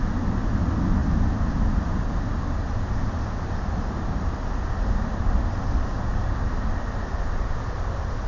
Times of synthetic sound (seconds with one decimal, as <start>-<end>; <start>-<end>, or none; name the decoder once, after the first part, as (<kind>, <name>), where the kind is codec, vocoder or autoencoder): none